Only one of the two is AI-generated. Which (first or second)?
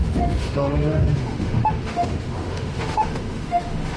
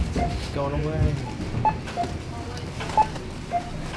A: first